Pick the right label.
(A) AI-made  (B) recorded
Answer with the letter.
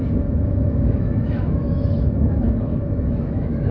A